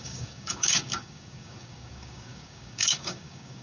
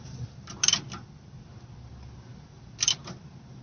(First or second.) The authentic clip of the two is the second